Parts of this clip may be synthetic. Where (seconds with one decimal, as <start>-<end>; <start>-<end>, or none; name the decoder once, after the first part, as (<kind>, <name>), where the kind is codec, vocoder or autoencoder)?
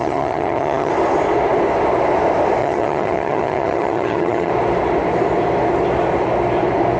0.0-0.9 (vocoder, HiFi-GAN); 2.6-4.5